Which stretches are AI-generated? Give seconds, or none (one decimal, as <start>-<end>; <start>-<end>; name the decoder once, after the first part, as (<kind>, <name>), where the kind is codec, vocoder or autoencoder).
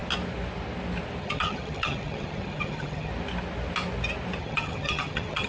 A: 1.2-3.1 (vocoder, HiFi-GAN); 4.4-5.5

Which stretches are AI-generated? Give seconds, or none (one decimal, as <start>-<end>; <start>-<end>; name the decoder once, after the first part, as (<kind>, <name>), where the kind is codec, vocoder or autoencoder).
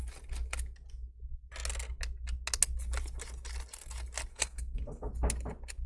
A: 4.3-5.1 (codec, SNAC)